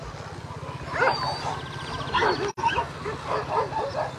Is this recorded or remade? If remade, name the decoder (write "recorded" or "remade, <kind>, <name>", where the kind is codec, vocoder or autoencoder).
recorded